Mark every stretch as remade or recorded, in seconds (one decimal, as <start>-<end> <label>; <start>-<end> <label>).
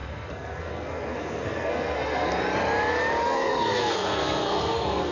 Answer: 0.0-2.3 remade; 2.3-3.2 recorded; 3.2-5.1 remade